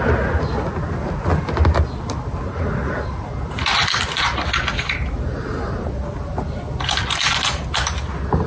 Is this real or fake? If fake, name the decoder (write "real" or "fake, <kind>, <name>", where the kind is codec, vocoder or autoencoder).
real